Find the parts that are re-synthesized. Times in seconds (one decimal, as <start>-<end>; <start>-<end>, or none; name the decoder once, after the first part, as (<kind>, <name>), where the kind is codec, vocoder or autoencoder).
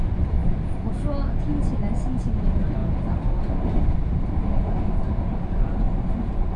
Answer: 0.4-0.9 (vocoder, BigVGAN v2); 2.8-3.5